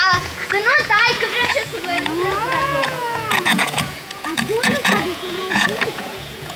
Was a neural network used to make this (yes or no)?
yes